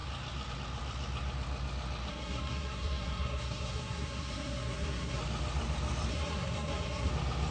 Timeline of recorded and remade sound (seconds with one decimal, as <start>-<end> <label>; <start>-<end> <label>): 0.0-2.1 recorded; 2.1-5.2 remade; 5.2-6.1 recorded; 6.1-7.1 remade; 7.1-7.5 recorded